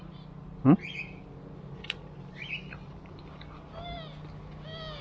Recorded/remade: recorded